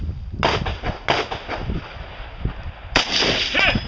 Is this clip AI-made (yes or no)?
no